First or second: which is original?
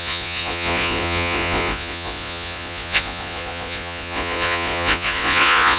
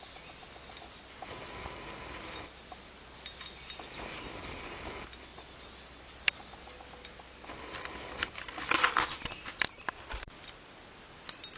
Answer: second